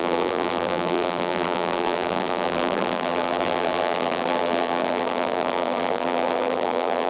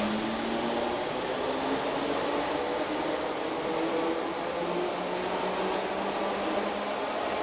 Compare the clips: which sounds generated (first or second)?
first